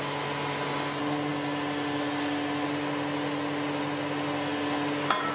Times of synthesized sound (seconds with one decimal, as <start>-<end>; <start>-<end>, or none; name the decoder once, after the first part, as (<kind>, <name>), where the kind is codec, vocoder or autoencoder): none